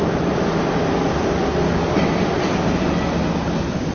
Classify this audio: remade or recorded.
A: recorded